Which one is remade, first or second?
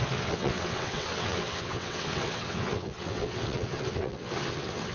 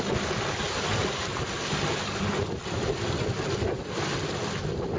first